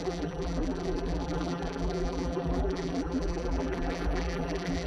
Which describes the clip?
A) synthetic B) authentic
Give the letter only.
A